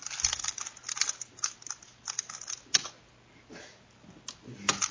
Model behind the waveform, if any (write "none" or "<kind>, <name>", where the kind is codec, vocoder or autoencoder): none